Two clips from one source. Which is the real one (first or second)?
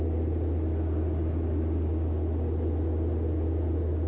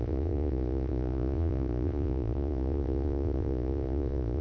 first